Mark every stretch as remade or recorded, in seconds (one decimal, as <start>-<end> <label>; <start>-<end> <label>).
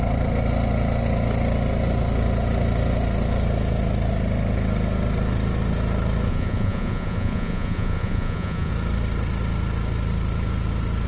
0.0-6.3 recorded; 6.3-8.7 remade; 8.7-11.1 recorded